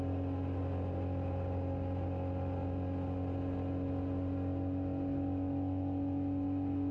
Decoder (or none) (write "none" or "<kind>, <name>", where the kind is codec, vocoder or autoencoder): none